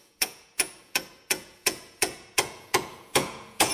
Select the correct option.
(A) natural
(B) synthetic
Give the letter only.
B